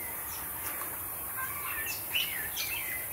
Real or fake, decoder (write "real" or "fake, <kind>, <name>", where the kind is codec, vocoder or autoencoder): real